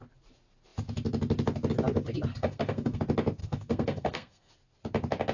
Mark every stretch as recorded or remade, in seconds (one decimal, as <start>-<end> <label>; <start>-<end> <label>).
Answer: 0.0-2.3 recorded; 2.3-3.0 remade; 3.0-3.4 recorded; 3.4-4.5 remade; 4.5-5.3 recorded